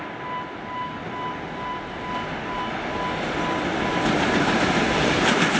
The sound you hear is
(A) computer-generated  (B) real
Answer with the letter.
B